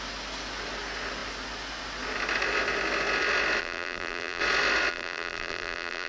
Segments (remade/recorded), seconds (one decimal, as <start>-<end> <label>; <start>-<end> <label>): 0.0-3.6 recorded; 3.6-4.4 remade; 4.4-4.9 recorded; 4.9-6.1 remade

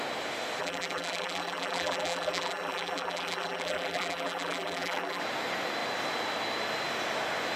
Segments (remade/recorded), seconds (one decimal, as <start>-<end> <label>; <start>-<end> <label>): 0.0-0.6 recorded; 0.6-5.2 remade; 5.2-7.6 recorded

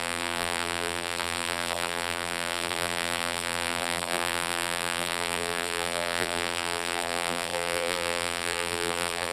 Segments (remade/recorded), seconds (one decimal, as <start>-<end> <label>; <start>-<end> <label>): 0.0-9.3 remade